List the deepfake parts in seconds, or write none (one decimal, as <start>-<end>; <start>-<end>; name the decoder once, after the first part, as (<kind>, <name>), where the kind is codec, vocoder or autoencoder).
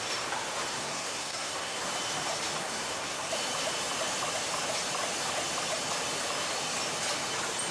0.7-1.8 (codec, SNAC); 2.6-3.3